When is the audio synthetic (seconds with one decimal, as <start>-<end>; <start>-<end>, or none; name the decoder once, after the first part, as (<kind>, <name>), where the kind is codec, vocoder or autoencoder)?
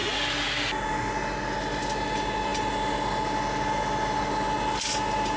none